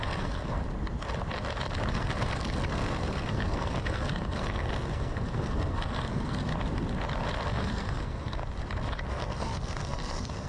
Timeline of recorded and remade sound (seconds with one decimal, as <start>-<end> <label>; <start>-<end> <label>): 0.0-0.6 remade; 0.6-1.9 recorded; 1.9-6.5 remade; 6.5-7.5 recorded; 7.5-8.4 remade; 8.4-9.1 recorded; 9.1-10.5 remade